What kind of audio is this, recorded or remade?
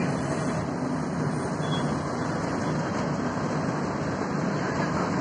recorded